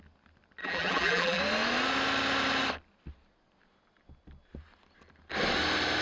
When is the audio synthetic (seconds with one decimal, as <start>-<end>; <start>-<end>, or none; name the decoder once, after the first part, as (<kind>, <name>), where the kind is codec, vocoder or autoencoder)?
0.6-1.4 (vocoder, BigVGAN v2)